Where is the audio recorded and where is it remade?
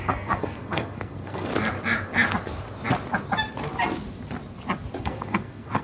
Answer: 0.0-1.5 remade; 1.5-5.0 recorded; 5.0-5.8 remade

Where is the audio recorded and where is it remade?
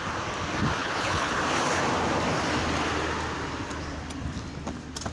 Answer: 0.0-0.8 recorded; 0.8-1.4 remade; 1.4-5.1 recorded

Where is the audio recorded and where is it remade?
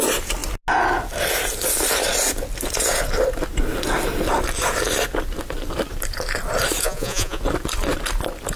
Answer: 0.0-6.8 recorded; 6.8-7.4 remade; 7.4-8.6 recorded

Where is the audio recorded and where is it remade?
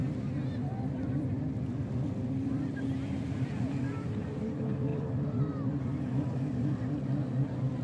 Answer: 0.0-7.8 remade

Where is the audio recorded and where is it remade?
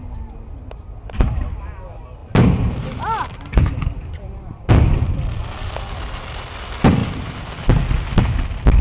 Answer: 0.0-2.2 recorded; 2.2-4.7 remade; 4.7-7.0 recorded; 7.0-7.5 remade; 7.5-8.8 recorded